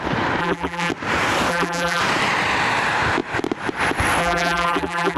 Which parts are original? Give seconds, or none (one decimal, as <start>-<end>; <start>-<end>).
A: 0.0-0.4; 0.9-1.5; 2.0-4.2